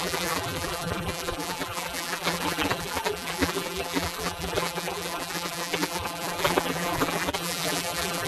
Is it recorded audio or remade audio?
remade